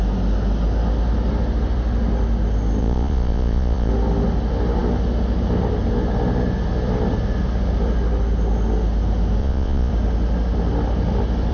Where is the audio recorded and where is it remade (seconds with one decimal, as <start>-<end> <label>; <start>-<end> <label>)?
0.0-2.8 recorded; 2.8-3.9 remade; 3.9-9.4 recorded; 9.4-9.9 remade; 9.9-11.5 recorded